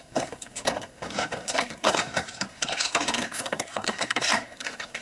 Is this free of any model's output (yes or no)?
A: no